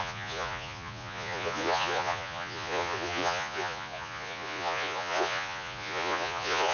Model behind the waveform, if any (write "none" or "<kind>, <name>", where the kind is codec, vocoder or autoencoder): vocoder, Vocos